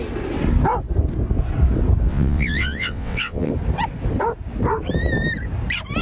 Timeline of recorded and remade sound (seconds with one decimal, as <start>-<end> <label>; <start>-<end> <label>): 0.0-2.1 recorded; 2.1-3.5 remade; 3.5-6.0 recorded